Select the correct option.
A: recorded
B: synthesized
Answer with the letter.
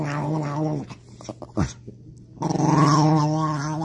A